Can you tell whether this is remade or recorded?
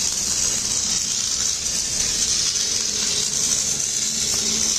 recorded